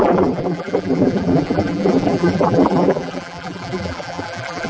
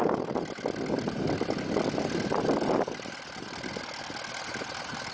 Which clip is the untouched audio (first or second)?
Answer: second